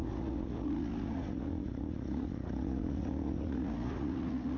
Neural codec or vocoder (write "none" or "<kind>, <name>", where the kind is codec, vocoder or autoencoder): vocoder, Vocos